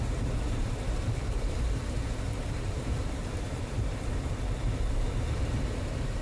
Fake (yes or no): yes